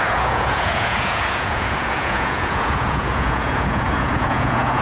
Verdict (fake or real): fake